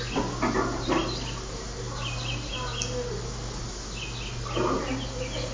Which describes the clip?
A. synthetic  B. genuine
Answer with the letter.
B